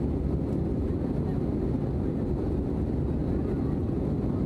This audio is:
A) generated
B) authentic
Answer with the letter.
B